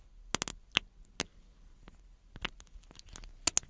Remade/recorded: recorded